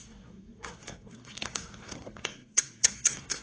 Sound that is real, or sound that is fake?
fake